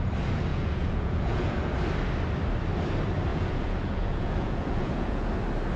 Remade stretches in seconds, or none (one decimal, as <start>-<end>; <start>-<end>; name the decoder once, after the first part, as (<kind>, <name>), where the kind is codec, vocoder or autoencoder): 0.5-1.7 (vocoder, Vocos); 3.3-5.3